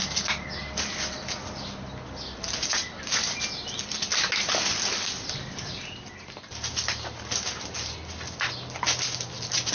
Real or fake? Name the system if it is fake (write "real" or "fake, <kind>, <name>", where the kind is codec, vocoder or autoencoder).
real